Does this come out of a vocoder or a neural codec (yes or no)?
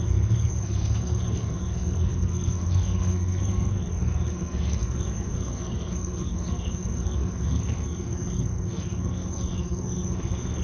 yes